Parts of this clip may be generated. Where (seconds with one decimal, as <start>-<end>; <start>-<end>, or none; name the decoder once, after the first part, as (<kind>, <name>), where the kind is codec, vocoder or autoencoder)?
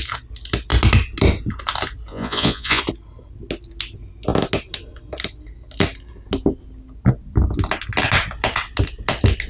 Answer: 2.1-2.8 (vocoder, Vocos)